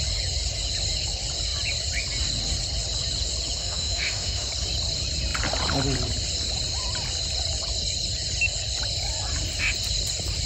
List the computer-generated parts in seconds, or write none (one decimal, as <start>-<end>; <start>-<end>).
3.6-4.5